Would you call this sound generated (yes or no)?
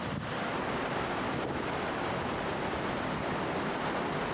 no